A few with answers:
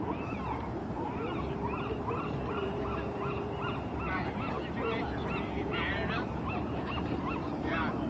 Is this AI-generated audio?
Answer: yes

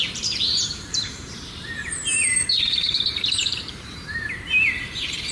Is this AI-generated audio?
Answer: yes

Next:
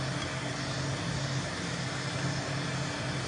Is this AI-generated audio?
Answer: no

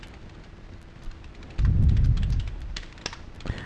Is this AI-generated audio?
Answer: no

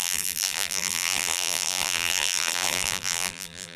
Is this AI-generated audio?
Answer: yes